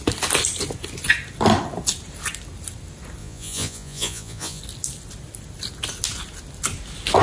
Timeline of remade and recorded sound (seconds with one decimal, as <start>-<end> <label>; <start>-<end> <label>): 0.0-3.2 recorded; 3.2-4.6 remade; 4.6-7.2 recorded